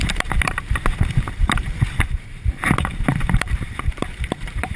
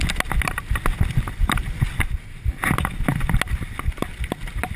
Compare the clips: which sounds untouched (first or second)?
second